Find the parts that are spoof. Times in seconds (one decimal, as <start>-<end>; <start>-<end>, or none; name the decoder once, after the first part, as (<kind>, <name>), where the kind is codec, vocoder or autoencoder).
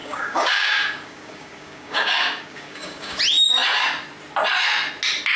0.0-3.2 (codec, DAC)